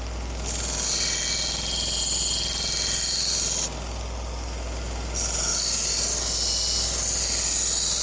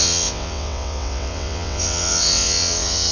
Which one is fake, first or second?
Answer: second